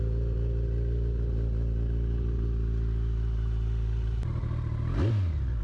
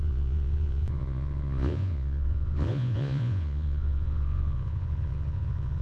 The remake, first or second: second